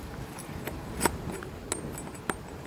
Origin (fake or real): real